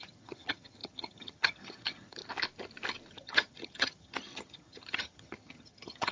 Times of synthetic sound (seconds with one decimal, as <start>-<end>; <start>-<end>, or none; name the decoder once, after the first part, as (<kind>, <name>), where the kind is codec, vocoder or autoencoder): 0.0-2.2 (vocoder, HiFi-GAN); 3.1-6.1